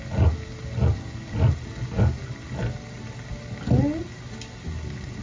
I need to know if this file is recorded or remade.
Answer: recorded